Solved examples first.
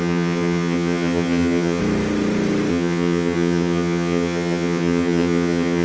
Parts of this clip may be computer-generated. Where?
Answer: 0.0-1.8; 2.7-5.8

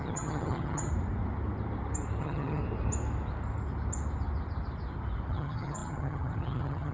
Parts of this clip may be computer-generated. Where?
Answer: 0.0-0.9; 2.2-2.6; 5.3-6.9